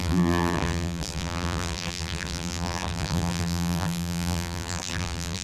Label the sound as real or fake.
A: fake